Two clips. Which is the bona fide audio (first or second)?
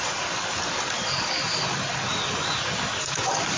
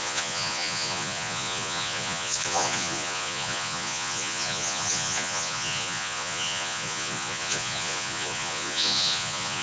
first